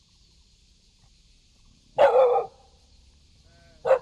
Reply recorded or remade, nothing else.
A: remade